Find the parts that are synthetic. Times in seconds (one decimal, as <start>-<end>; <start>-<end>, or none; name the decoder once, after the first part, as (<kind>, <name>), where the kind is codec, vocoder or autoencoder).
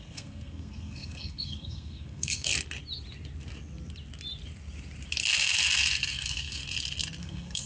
0.0-2.5 (codec, SNAC); 6.1-6.6; 7.2-7.7